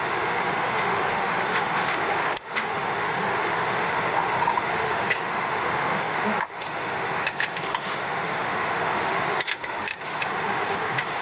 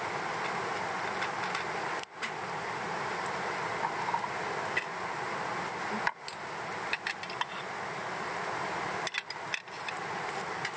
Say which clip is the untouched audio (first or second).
second